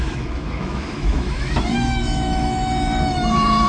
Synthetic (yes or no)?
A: yes